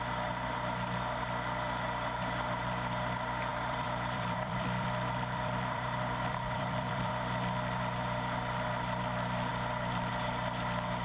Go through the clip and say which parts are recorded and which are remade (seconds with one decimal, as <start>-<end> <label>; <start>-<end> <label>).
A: 0.0-3.5 recorded; 3.5-7.1 remade; 7.1-11.0 recorded